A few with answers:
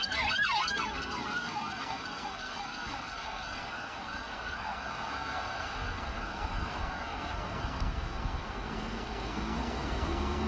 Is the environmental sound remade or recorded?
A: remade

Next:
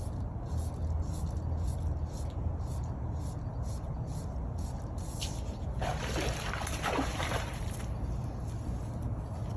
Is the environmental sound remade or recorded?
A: recorded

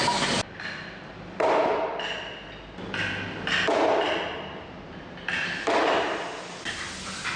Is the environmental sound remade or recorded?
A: recorded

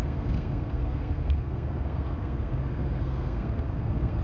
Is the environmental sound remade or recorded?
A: remade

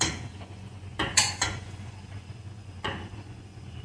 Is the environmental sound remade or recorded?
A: remade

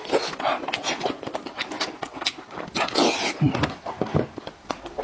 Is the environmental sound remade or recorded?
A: recorded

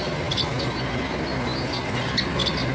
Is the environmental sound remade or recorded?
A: recorded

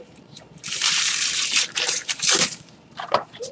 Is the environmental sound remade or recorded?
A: remade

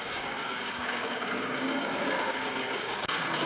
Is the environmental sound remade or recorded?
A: remade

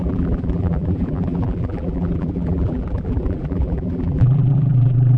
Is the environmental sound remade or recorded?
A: remade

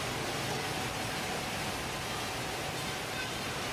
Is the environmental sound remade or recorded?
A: recorded